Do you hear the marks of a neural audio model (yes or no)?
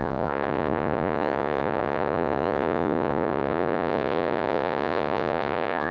yes